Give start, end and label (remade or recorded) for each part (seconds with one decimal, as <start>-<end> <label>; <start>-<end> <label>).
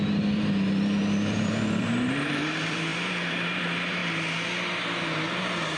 0.0-4.0 remade; 4.0-5.8 recorded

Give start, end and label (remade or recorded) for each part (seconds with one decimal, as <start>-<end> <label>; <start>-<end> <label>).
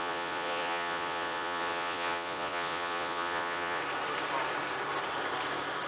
0.0-3.8 remade; 3.8-5.9 recorded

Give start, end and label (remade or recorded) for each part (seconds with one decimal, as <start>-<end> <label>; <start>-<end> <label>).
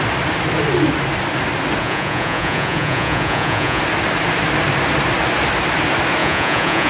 0.0-1.8 recorded; 1.8-3.8 remade; 3.8-6.2 recorded; 6.2-6.9 remade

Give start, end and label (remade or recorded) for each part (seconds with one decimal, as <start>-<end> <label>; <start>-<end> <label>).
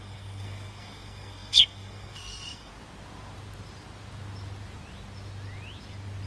0.0-2.7 remade; 2.7-6.3 recorded